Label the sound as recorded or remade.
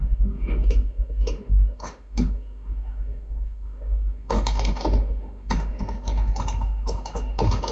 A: remade